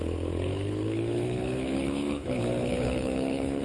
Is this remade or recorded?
remade